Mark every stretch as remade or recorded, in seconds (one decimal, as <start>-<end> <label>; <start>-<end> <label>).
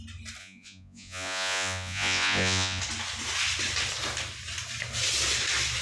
0.0-0.4 recorded; 0.4-2.8 remade; 2.8-5.8 recorded